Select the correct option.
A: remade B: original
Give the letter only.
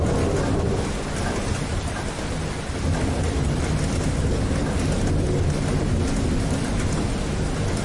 B